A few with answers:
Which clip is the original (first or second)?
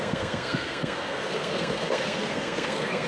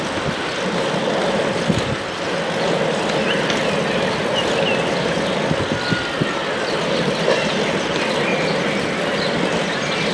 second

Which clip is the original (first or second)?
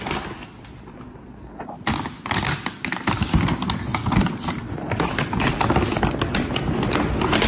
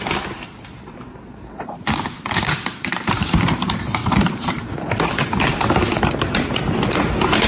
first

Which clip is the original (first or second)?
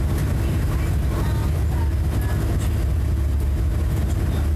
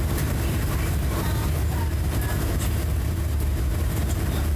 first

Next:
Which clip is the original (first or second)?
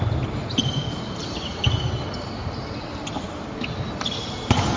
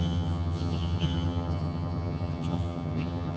first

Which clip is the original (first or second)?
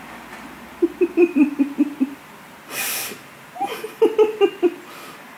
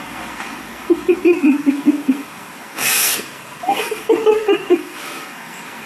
first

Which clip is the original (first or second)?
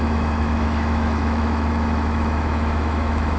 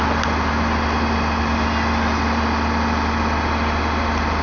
second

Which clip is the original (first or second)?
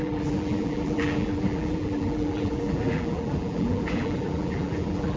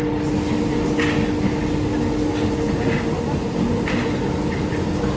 second